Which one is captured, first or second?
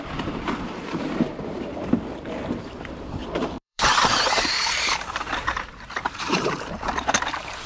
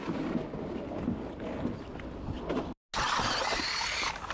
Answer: second